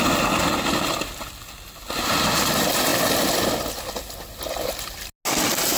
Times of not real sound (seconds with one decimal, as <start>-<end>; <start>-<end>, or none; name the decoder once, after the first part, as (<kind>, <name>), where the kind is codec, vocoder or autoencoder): none